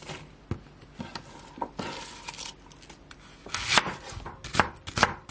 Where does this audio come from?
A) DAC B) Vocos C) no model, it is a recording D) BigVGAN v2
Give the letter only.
C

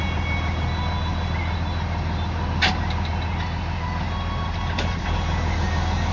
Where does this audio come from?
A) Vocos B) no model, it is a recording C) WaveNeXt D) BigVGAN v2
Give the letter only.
B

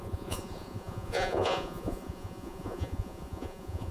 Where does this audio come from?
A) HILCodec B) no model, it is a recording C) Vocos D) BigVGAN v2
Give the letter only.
C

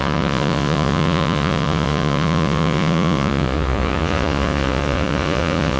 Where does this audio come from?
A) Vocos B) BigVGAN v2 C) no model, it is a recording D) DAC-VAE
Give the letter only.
A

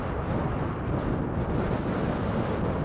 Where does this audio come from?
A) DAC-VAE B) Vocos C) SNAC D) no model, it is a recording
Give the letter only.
D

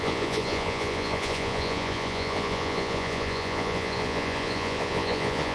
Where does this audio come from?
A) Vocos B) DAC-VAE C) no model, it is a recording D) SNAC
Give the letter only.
A